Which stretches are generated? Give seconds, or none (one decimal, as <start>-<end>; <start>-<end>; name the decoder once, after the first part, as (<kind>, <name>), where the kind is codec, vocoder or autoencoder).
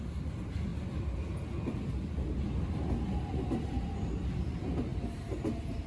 none